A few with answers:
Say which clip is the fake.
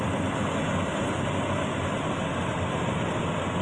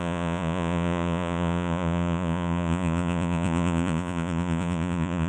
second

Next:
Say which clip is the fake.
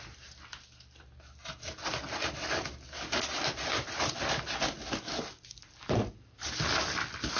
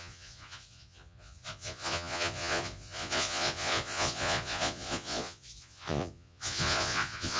second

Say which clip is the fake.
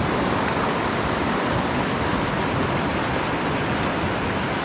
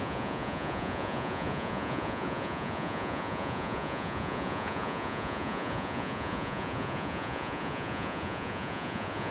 second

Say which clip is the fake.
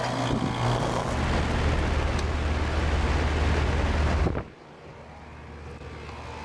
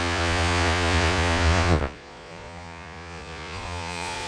second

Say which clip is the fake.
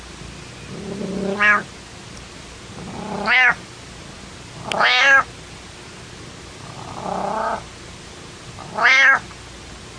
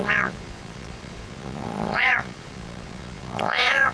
second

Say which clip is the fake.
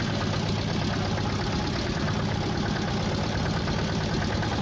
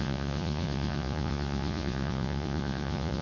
second